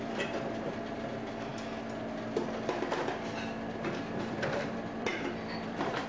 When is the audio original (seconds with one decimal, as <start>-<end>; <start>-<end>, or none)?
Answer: 1.5-4.2

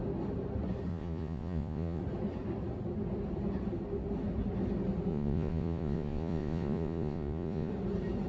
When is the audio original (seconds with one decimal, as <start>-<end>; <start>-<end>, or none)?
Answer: 0.0-0.9; 2.0-5.1; 7.7-8.3

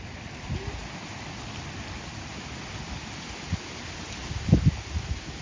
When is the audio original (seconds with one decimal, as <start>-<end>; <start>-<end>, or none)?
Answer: 0.0-5.4

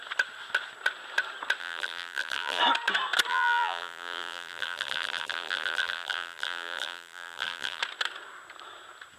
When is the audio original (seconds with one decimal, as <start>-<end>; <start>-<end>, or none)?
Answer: 0.0-1.6; 2.6-3.3; 7.8-9.2

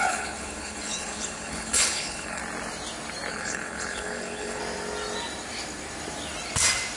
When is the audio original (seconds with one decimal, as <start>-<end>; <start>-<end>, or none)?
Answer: 2.4-3.3; 4.6-7.0

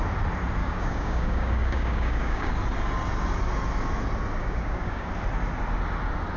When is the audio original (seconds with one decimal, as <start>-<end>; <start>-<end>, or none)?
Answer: 0.0-0.6; 2.5-4.4; 5.1-6.4

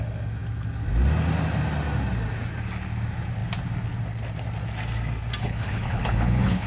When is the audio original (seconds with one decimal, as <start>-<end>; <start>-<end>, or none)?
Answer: 0.0-5.4

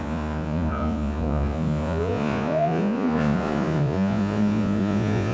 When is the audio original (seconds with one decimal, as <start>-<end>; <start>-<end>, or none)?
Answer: none